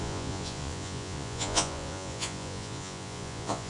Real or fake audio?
fake